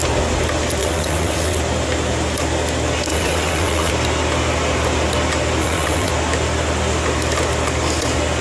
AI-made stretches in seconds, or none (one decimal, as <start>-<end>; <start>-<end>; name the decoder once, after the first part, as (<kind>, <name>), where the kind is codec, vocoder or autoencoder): 0.8-1.6 (vocoder, WaveNeXt); 3.1-3.9; 5.6-6.1